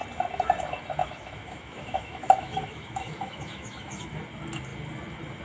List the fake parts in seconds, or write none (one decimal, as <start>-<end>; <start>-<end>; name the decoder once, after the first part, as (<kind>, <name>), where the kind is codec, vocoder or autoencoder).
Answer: 1.0-4.2 (autoencoder, DAC-VAE)